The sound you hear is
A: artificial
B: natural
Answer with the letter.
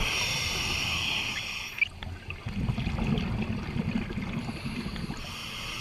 B